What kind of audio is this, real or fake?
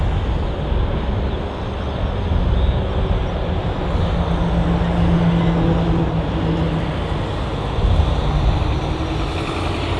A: real